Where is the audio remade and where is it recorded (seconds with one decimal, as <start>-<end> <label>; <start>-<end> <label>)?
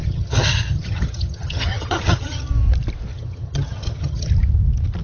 0.0-2.5 remade; 2.5-3.1 recorded; 3.1-4.3 remade; 4.3-5.0 recorded